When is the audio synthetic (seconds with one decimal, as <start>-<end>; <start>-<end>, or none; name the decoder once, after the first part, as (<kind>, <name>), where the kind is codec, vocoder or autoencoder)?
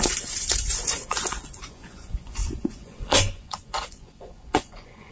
0.0-5.1 (vocoder, Vocos)